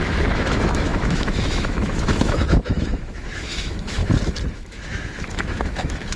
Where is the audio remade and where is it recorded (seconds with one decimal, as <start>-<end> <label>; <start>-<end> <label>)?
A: 0.0-4.0 remade; 4.0-4.5 recorded; 4.5-6.2 remade